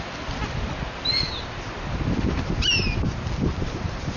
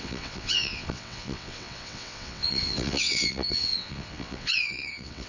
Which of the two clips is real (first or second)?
first